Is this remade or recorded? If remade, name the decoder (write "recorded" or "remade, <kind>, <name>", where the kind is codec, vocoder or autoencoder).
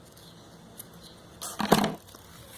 recorded